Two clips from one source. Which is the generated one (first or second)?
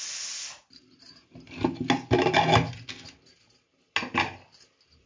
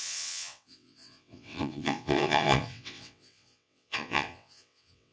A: second